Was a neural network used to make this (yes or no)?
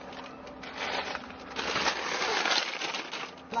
no